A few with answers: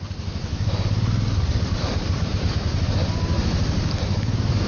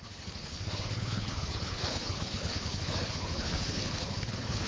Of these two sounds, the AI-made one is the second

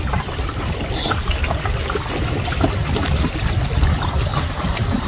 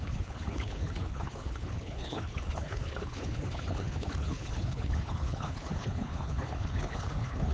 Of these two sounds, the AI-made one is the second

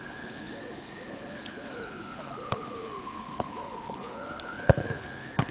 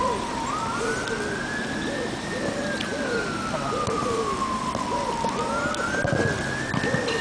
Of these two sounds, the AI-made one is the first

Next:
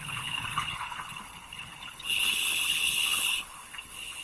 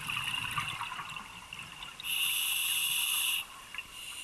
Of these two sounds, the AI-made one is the first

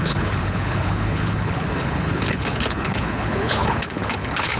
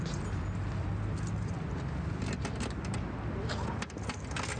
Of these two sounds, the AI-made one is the first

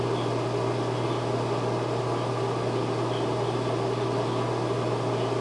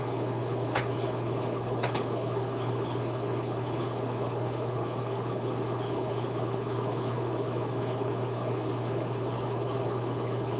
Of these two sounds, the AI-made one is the second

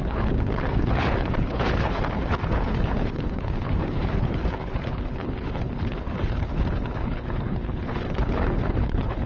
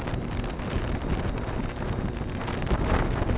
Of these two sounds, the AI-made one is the first